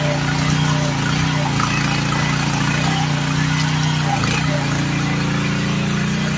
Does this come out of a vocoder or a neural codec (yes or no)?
no